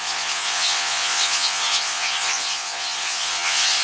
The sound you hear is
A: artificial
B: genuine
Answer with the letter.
A